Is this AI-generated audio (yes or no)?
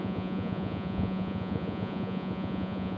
yes